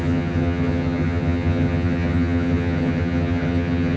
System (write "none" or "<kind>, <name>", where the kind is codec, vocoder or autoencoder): vocoder, HiFi-GAN